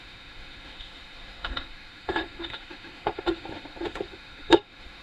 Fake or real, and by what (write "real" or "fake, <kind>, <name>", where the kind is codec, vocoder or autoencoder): fake, autoencoder, DAC-VAE